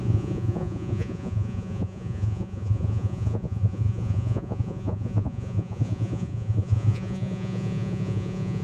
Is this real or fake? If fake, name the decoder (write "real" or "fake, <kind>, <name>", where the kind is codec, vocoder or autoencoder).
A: fake, vocoder, Vocos